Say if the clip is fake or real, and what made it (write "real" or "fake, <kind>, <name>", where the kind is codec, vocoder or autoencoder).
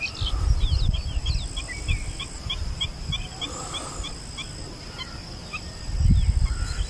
real